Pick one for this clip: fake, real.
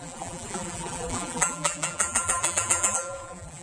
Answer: fake